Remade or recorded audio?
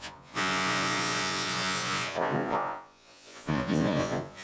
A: remade